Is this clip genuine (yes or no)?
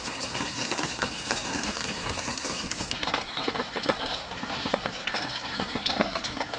no